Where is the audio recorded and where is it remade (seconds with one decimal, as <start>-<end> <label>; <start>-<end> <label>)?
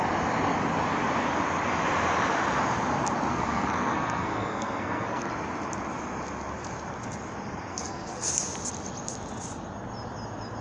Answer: 0.0-3.3 recorded; 3.3-5.3 remade; 5.3-7.7 recorded; 7.7-8.3 remade; 8.3-10.6 recorded